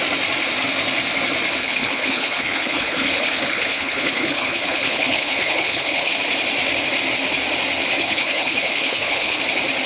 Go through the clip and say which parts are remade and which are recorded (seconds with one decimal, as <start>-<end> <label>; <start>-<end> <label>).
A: 0.0-1.6 recorded; 1.6-6.1 remade; 6.1-8.0 recorded; 8.0-9.4 remade; 9.4-9.9 recorded